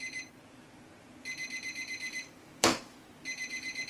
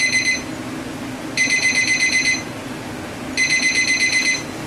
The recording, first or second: second